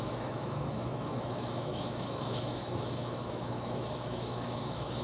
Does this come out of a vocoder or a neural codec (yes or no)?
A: yes